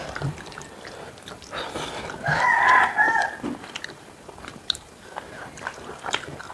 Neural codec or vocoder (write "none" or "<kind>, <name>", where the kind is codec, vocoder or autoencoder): vocoder, BigVGAN v2